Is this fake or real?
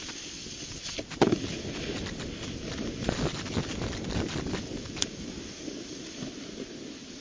real